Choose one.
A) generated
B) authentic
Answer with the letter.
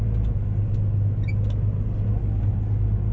B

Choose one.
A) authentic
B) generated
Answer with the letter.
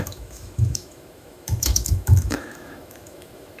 B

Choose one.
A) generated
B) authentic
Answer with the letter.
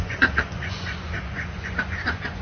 A